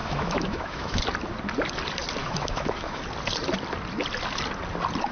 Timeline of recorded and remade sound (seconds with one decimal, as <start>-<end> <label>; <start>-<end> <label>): 0.0-1.0 remade; 1.0-2.2 recorded; 2.2-3.0 remade; 3.0-5.1 recorded